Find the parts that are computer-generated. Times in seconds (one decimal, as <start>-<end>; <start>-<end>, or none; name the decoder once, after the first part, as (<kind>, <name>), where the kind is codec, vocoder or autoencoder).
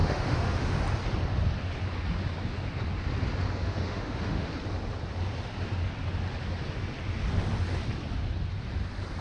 0.0-0.8 (autoencoder, DAC-VAE); 3.6-4.5